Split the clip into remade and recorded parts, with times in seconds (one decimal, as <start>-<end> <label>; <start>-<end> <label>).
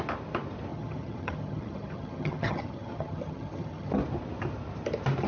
0.0-0.7 recorded; 0.7-3.9 remade; 3.9-5.3 recorded